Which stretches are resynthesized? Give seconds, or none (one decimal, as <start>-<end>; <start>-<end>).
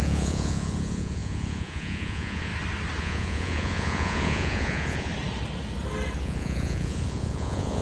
0.0-2.5; 3.0-5.1; 6.2-7.8